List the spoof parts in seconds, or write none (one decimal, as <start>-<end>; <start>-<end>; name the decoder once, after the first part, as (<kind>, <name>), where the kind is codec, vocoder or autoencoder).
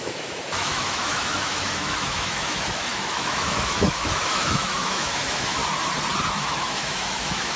0.0-5.6 (autoencoder, DAC-VAE); 6.3-7.6